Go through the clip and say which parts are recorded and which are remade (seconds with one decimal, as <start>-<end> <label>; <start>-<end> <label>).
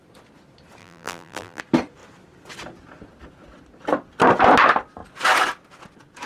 0.0-0.8 recorded; 0.8-1.6 remade; 1.6-6.3 recorded